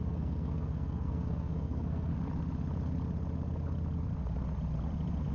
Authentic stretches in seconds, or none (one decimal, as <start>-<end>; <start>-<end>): 2.1-5.3